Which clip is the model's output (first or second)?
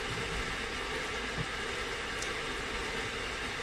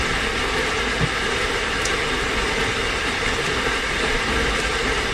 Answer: second